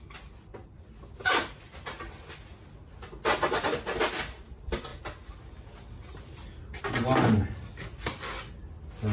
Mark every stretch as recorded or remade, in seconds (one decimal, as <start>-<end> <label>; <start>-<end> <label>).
0.0-9.1 recorded